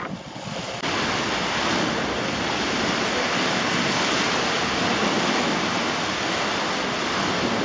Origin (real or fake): real